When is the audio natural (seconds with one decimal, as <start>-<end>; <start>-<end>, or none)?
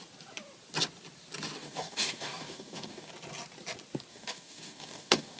0.0-1.6; 3.1-4.1